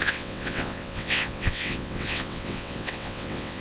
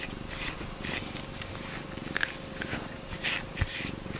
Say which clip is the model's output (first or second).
first